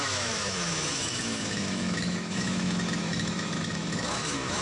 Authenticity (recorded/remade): remade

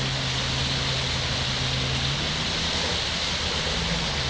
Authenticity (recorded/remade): recorded